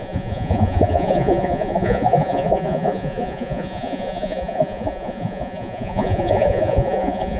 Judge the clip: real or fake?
fake